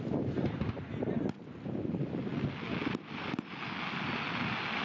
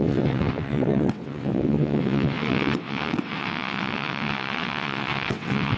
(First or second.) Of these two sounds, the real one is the first